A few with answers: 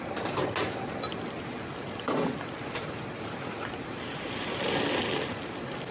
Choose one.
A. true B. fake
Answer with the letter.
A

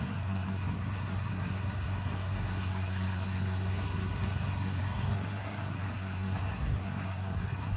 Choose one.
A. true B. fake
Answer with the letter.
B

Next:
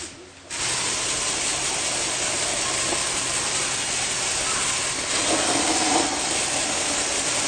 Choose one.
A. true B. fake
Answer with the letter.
A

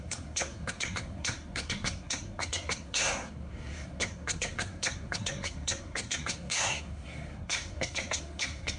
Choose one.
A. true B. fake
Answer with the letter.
B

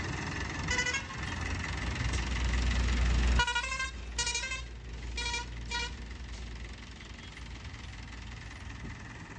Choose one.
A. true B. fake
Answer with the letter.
A